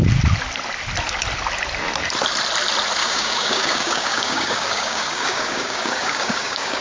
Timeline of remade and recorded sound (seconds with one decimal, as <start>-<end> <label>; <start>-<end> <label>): 0.0-3.0 recorded; 3.0-6.8 remade